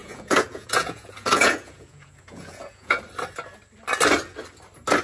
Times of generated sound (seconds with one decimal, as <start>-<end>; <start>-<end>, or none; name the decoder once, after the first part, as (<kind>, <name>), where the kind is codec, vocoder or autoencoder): 0.0-3.0 (vocoder, Vocos)